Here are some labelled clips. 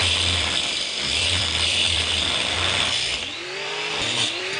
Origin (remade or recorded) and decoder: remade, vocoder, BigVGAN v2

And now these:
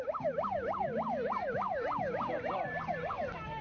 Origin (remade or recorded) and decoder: recorded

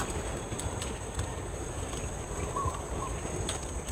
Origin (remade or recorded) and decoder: recorded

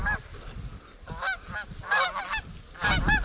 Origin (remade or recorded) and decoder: recorded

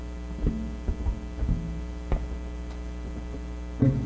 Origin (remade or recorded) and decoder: recorded